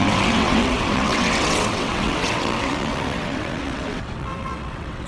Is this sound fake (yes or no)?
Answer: yes